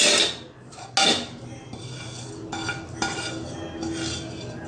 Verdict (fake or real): real